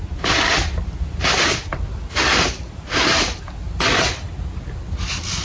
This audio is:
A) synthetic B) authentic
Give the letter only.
B